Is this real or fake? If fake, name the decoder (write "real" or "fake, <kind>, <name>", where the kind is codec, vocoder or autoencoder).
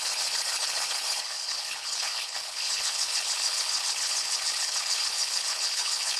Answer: fake, codec, HILCodec